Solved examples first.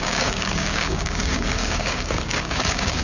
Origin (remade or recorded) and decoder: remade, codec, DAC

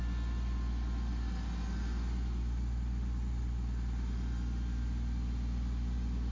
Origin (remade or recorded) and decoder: recorded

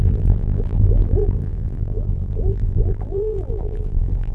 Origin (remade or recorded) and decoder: remade, vocoder, BigVGAN v2